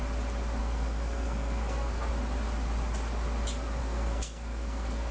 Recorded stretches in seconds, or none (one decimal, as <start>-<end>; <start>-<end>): 0.0-0.6; 2.1-3.8